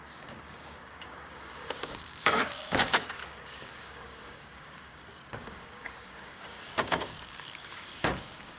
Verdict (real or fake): fake